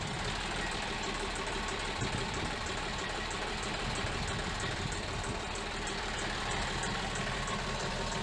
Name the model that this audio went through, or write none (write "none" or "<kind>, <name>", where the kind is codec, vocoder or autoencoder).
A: vocoder, BigVGAN v2